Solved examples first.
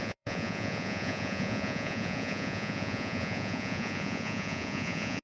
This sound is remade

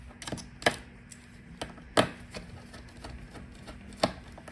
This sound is recorded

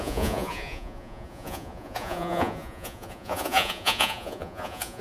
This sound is remade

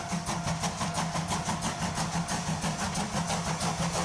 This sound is recorded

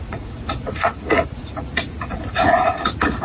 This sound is remade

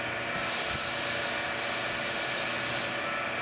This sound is recorded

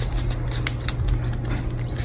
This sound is recorded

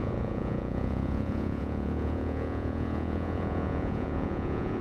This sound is remade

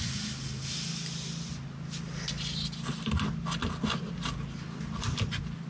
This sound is recorded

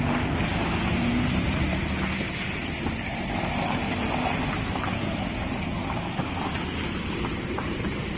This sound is recorded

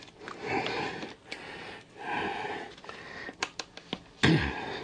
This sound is recorded